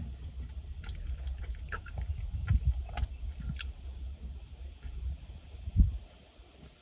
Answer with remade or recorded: recorded